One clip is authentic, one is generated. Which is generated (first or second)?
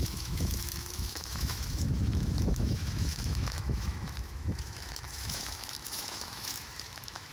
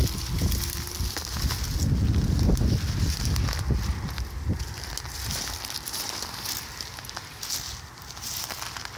first